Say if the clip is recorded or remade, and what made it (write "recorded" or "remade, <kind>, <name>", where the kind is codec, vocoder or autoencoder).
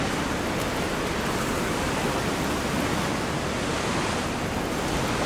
recorded